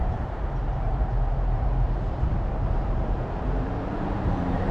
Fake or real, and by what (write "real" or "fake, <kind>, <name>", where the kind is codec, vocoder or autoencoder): fake, vocoder, BigVGAN v2